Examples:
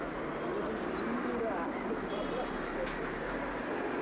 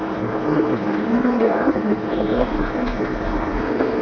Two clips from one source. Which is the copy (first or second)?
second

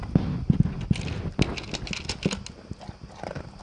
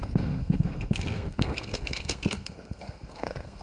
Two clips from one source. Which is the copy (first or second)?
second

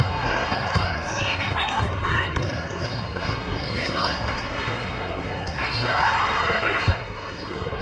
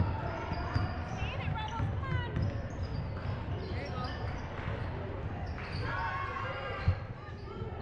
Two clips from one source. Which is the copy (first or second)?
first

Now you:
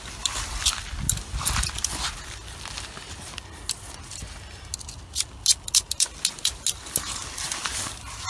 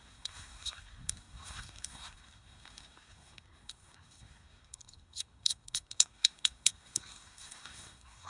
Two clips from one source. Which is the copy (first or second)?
second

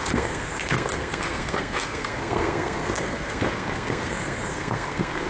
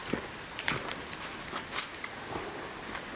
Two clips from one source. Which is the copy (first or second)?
first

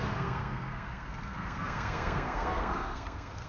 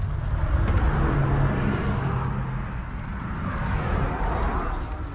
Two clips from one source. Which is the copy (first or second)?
first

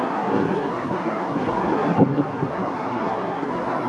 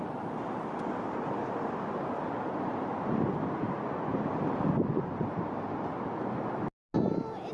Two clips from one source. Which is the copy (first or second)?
first